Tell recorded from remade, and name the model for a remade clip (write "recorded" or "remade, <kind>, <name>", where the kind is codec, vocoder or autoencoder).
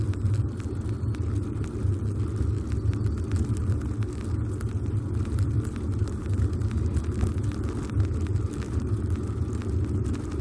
recorded